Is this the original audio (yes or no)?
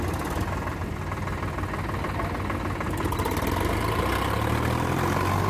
yes